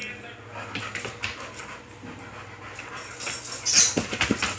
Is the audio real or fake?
real